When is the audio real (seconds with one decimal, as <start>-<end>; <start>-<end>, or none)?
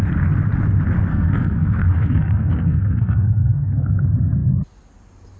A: 0.0-1.1; 3.7-5.4